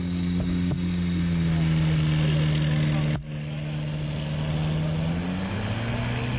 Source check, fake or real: real